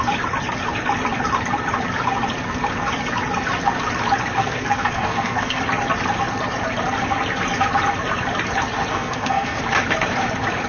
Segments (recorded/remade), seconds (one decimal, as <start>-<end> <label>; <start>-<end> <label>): 0.0-4.4 recorded; 4.4-5.6 remade; 5.6-8.9 recorded; 8.9-9.6 remade; 9.6-10.7 recorded